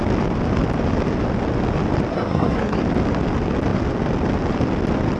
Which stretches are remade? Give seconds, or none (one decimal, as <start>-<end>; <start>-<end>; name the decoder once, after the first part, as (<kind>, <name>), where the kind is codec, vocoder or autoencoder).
2.1-2.8 (codec, SNAC)